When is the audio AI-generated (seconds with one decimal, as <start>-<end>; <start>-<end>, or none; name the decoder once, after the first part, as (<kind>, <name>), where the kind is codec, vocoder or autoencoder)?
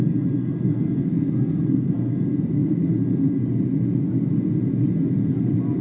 0.4-2.1 (codec, SNAC)